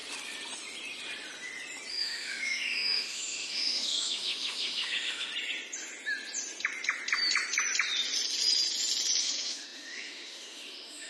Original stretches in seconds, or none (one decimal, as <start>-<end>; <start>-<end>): 0.0-1.9; 5.3-9.2